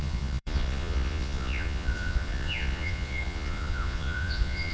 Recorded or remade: remade